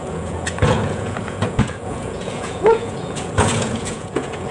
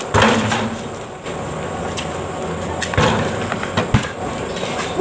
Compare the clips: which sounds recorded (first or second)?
second